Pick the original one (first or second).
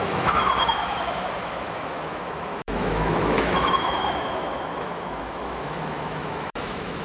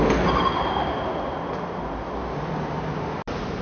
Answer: second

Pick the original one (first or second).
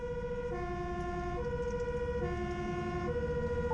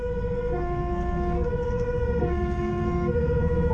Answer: first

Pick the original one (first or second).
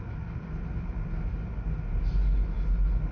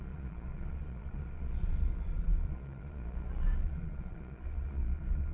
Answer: first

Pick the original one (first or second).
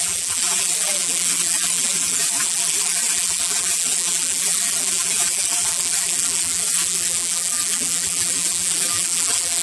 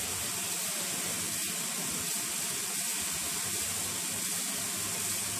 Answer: second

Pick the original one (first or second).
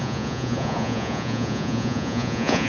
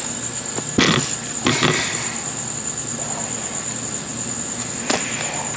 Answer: second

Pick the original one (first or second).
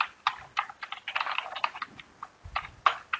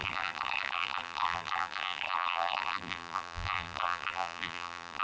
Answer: first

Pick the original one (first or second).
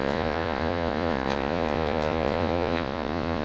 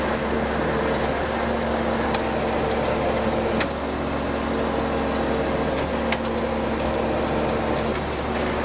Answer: second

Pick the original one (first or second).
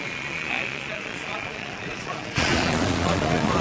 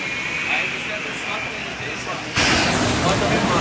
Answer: second